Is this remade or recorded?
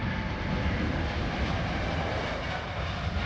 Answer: recorded